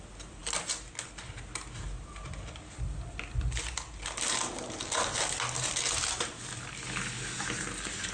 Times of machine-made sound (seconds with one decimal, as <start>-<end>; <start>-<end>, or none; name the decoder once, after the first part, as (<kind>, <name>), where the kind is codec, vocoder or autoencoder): none